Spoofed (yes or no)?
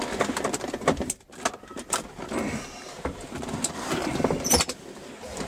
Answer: no